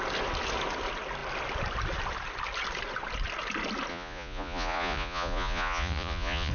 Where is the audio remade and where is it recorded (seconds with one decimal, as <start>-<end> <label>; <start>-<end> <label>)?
0.0-3.9 recorded; 3.9-6.5 remade